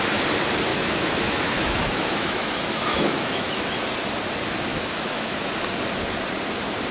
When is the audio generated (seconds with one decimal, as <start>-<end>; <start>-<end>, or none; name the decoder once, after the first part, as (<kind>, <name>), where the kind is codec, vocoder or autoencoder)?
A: 0.7-3.6 (autoencoder, DAC-VAE); 4.7-5.5